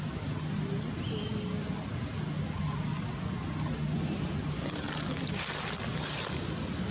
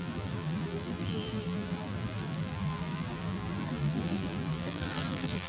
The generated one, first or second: second